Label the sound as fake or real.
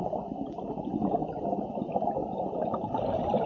real